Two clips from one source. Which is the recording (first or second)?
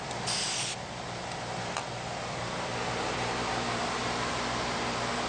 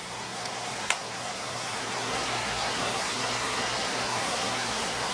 first